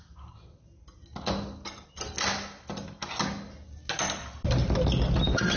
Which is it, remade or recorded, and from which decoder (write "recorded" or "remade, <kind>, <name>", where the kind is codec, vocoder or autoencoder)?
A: recorded